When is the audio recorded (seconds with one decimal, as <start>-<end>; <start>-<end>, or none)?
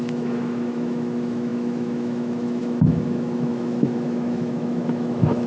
none